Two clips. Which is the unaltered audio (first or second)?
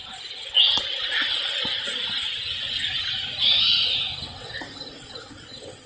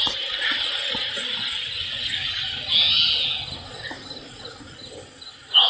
second